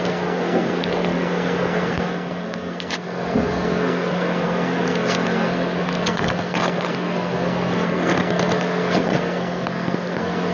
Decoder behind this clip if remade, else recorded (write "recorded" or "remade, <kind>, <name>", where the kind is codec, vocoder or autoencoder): remade, codec, SNAC